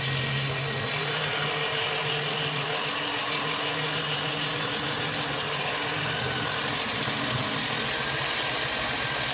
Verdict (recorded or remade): recorded